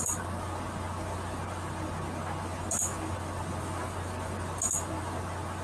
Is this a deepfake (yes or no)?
no